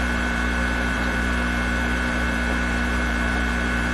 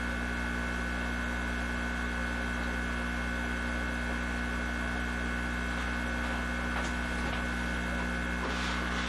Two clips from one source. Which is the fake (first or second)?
first